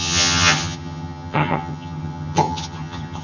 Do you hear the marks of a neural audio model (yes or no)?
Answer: yes